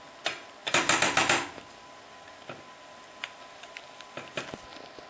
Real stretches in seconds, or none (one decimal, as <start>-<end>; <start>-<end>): 0.0-5.1